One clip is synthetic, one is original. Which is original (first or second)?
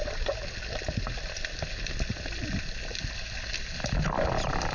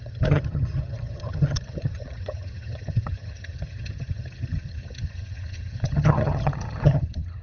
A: first